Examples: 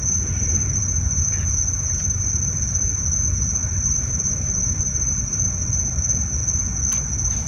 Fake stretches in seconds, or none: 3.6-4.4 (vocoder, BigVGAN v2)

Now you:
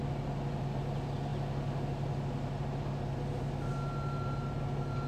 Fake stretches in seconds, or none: none

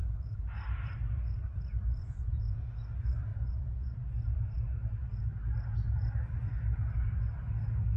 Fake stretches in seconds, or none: 2.0-2.6 (vocoder, Vocos); 3.3-4.1

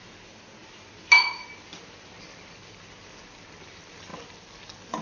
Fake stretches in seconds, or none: none

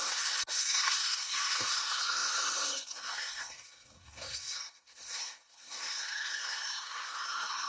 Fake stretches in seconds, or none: 0.0-7.7 (codec, SNAC)

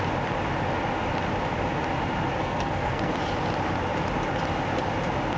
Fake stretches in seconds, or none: 2.4-3.1 (codec, SNAC)

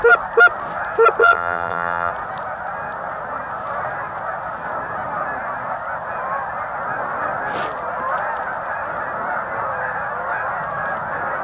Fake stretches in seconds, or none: 1.2-2.1 (vocoder, BigVGAN v2)

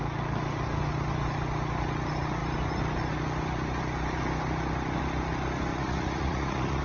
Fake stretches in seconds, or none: 5.7-6.8 (vocoder, Vocos)